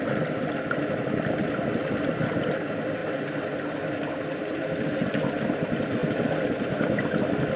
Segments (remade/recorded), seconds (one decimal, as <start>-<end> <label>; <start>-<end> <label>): 0.0-7.6 recorded